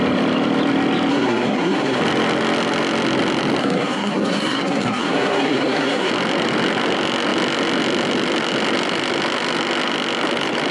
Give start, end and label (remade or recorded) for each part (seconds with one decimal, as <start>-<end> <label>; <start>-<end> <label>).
0.0-1.1 recorded; 1.1-2.0 remade; 2.0-3.6 recorded; 3.6-6.1 remade; 6.1-10.7 recorded